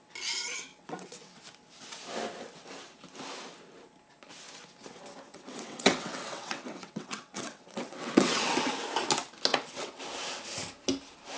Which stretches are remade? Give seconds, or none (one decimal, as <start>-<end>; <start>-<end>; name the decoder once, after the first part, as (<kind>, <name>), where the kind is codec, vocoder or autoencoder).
0.7-1.4 (vocoder, WaveNeXt); 5.3-8.7; 9.5-10.0